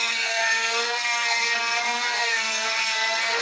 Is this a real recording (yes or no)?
no